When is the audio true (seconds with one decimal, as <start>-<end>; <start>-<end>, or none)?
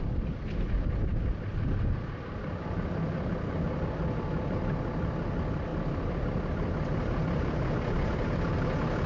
0.0-9.1